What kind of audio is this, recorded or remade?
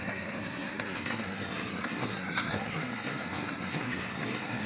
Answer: remade